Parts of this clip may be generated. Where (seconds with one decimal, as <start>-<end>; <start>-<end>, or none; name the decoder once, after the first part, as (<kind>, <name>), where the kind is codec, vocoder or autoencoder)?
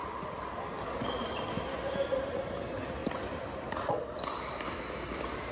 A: none